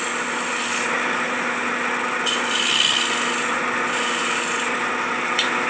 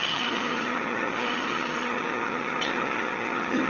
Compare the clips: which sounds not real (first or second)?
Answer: second